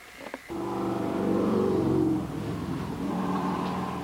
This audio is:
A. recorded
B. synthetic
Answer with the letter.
A